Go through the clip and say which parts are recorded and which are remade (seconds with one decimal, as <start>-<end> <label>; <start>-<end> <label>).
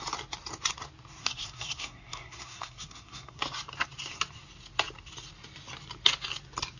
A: 0.0-1.2 recorded; 1.2-3.4 remade; 3.4-6.8 recorded